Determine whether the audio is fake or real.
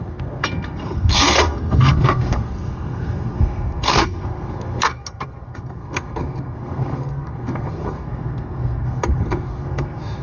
fake